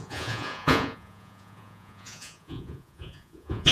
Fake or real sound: fake